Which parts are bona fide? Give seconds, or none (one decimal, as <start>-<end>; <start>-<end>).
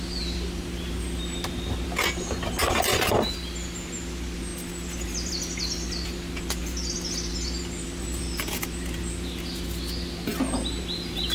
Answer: 0.0-11.3